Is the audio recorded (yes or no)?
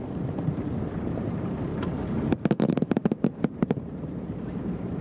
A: no